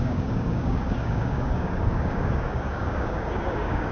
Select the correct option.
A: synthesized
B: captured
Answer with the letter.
A